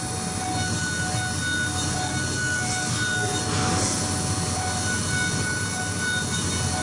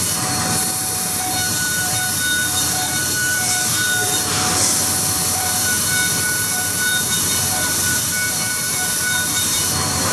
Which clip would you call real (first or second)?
first